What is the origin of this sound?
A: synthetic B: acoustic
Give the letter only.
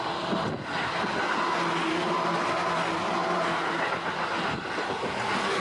B